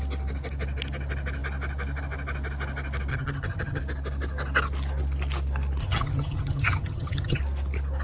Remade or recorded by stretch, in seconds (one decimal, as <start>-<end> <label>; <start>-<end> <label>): 0.0-3.1 recorded; 3.1-3.8 remade; 3.8-5.8 recorded; 5.8-7.4 remade; 7.4-8.0 recorded